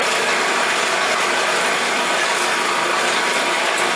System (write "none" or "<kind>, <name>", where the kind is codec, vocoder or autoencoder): none